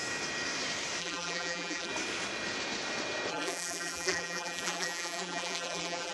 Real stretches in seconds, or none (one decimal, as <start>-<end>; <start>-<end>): 0.0-1.0; 1.9-3.3